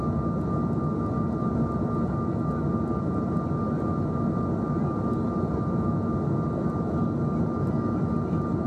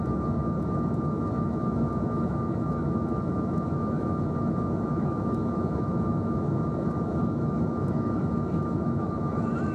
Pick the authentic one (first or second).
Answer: first